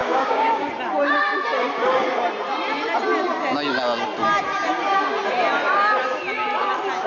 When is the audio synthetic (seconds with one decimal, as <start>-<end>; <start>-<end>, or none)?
0.0-0.7